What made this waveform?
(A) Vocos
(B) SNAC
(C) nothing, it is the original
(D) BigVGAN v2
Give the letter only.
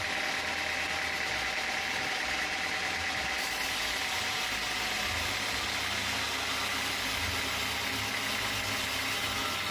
C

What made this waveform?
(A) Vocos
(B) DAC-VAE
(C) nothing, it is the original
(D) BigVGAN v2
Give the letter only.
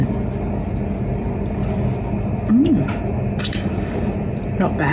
C